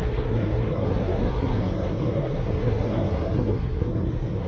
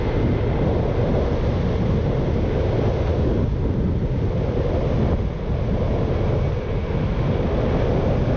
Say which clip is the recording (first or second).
second